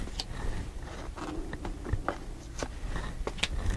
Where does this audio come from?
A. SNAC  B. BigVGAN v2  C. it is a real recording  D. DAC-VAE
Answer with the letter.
C